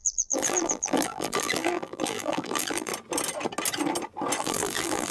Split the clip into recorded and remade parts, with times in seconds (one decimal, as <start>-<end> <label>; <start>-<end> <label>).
0.0-2.9 remade; 2.9-4.4 recorded; 4.4-5.1 remade